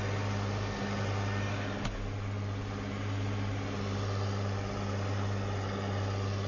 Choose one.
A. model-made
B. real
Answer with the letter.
B